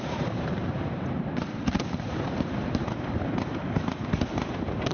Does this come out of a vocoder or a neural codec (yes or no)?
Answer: yes